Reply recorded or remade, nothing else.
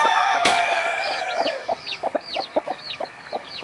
remade